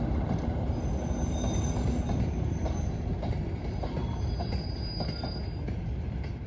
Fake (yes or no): no